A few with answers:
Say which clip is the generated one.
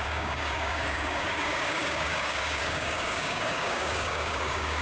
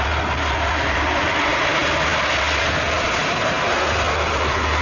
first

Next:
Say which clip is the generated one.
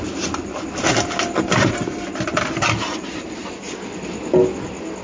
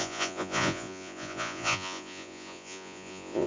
second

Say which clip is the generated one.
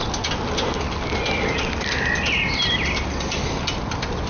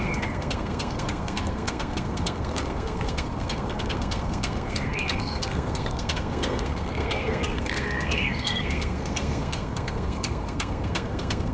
second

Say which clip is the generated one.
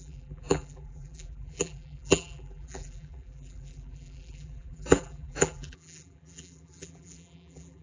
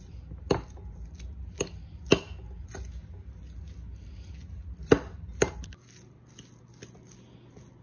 first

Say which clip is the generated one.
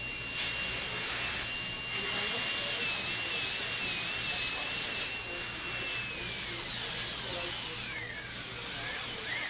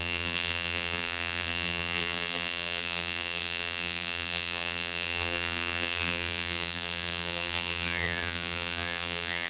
second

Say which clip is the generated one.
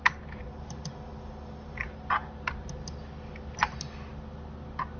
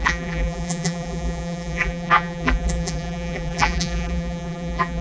second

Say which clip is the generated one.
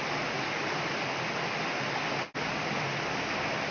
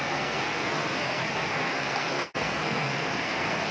second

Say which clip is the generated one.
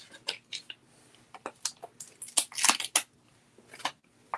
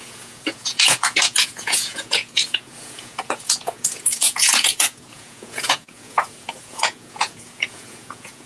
second